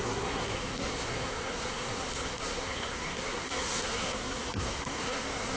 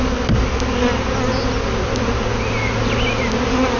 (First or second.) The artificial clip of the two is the first